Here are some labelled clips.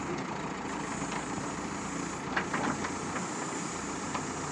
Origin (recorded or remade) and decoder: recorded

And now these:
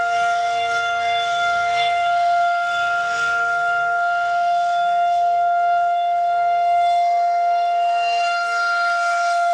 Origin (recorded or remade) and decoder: remade, codec, SNAC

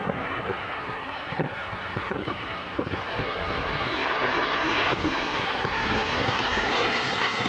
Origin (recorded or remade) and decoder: remade, codec, SNAC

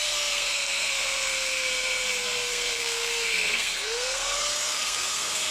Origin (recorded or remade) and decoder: remade, codec, SNAC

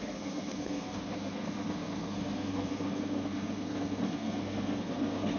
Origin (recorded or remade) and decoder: remade, codec, SNAC